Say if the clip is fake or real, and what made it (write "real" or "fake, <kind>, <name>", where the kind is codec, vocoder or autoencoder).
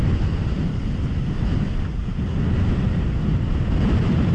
real